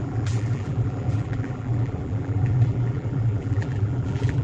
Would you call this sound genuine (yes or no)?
no